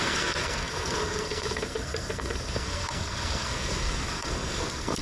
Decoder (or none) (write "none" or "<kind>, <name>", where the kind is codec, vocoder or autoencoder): codec, SNAC